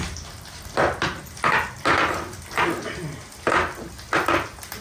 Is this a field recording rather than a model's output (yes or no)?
yes